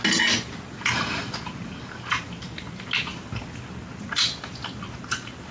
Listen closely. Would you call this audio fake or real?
real